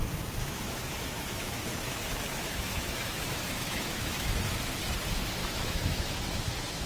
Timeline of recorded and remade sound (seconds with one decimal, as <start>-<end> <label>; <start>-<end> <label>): 0.0-0.4 recorded; 0.4-4.5 remade; 4.5-5.4 recorded; 5.4-6.9 remade